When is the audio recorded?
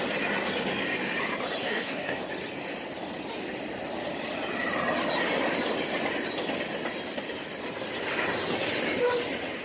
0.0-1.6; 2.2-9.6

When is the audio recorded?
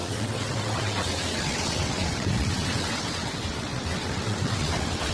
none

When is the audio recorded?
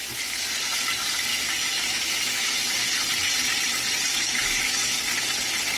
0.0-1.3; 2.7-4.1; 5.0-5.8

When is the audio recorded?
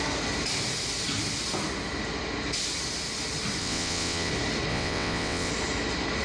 0.0-3.6; 4.3-4.7; 5.5-6.2